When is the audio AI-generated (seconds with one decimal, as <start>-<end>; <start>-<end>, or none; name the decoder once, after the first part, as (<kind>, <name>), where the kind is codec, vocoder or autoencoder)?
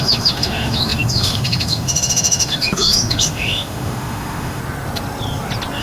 0.0-4.6 (autoencoder, DAC-VAE)